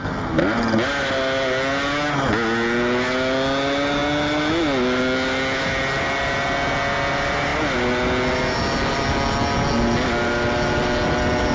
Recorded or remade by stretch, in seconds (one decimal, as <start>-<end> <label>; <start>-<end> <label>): 0.0-11.5 recorded